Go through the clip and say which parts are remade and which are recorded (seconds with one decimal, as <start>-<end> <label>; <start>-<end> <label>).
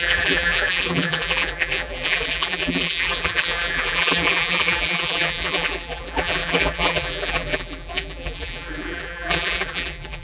0.0-10.2 remade